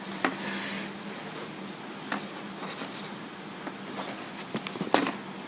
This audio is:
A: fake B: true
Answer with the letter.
B